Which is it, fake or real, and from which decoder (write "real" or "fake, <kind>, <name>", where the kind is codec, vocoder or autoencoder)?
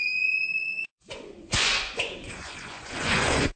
fake, vocoder, Vocos